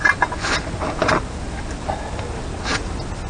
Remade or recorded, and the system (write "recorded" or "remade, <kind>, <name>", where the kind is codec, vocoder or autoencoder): recorded